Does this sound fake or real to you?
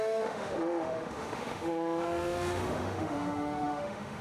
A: fake